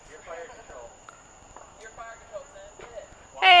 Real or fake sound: real